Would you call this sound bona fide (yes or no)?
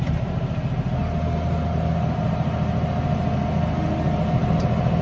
yes